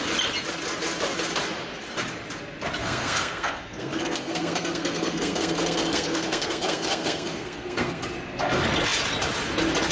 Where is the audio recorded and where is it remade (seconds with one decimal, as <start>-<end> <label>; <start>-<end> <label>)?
0.0-2.8 recorded; 2.8-8.0 remade; 8.0-9.9 recorded